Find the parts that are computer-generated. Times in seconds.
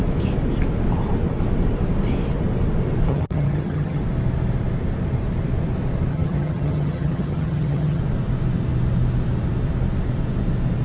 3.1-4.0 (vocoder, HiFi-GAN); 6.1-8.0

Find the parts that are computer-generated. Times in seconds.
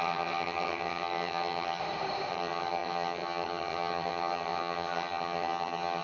0.0-1.8 (vocoder, HiFi-GAN); 2.3-6.0